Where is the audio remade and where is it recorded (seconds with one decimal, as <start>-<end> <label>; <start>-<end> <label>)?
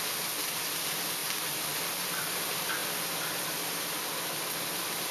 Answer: 0.0-2.8 remade; 2.8-4.6 recorded; 4.6-5.1 remade